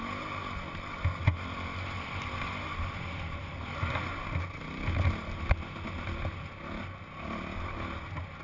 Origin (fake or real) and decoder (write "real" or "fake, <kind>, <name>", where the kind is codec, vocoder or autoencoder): real